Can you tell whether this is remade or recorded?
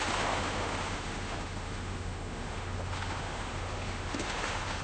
remade